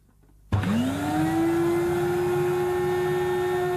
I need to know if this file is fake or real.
real